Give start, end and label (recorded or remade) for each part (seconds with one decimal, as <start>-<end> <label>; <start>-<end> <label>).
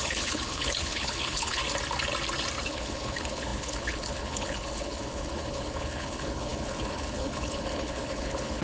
0.0-1.6 remade; 1.6-2.6 recorded; 2.6-8.6 remade